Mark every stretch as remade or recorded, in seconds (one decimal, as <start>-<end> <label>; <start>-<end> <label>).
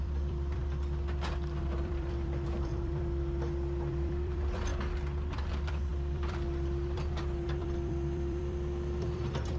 0.0-0.6 remade; 0.6-1.6 recorded; 1.6-4.7 remade; 4.7-5.3 recorded; 5.3-9.6 remade